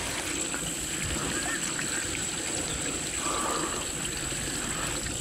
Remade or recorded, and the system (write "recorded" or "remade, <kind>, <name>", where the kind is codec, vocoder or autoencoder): recorded